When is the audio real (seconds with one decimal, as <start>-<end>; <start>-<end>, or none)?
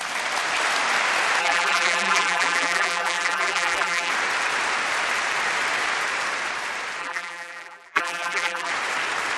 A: 0.0-1.4; 4.1-7.0; 8.7-9.4